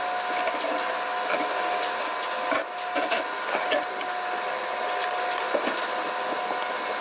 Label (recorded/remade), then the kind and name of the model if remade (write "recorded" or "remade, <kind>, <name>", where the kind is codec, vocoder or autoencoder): recorded